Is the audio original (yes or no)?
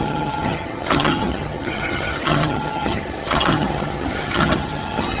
no